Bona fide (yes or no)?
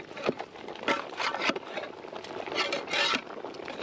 yes